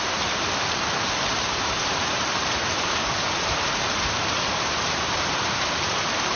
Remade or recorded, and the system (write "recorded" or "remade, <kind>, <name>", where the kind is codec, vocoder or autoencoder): remade, vocoder, BigVGAN v2